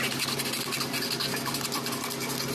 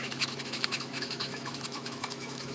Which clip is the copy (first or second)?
second